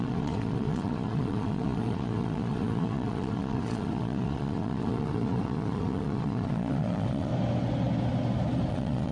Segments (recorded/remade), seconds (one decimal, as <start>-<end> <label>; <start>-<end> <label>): 0.0-7.3 remade; 7.3-8.7 recorded; 8.7-9.1 remade